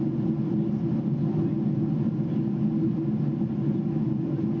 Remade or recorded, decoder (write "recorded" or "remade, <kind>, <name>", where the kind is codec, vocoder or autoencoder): recorded